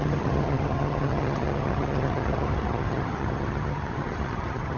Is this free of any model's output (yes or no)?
no